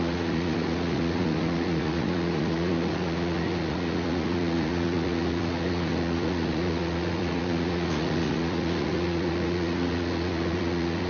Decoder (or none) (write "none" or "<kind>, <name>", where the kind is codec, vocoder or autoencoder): vocoder, Vocos